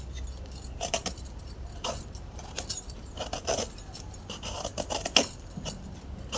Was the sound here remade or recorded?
recorded